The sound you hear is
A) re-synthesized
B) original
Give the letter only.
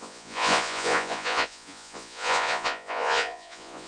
A